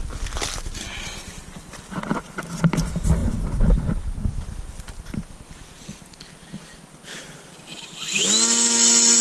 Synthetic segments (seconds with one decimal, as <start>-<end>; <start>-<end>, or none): none